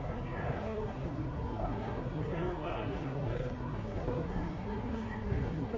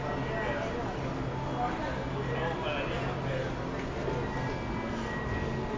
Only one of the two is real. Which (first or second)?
second